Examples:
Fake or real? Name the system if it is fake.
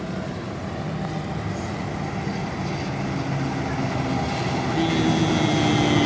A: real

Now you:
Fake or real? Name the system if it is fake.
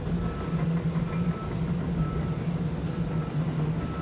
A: real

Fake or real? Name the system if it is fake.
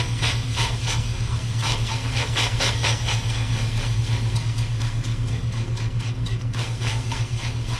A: fake, codec, SNAC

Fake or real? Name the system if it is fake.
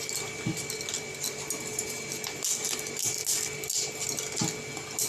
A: real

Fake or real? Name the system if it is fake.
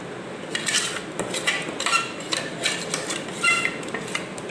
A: real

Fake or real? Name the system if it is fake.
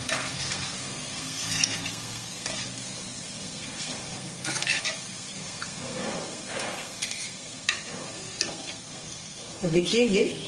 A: fake, codec, SNAC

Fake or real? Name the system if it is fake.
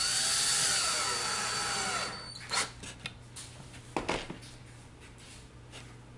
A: real